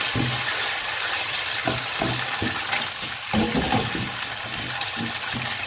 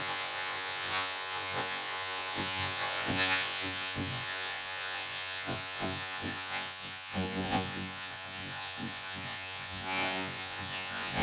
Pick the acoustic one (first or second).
first